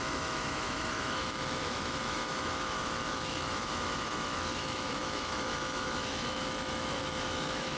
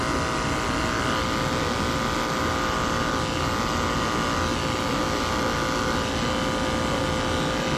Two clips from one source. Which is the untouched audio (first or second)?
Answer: second